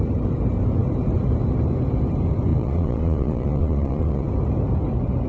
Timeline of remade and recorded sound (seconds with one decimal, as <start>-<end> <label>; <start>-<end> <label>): 0.0-2.5 recorded; 2.5-4.3 remade; 4.3-5.3 recorded